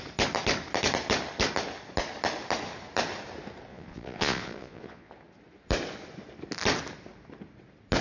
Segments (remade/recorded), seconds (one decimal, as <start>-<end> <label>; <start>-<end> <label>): 0.0-3.7 recorded; 3.7-5.1 remade; 5.1-8.0 recorded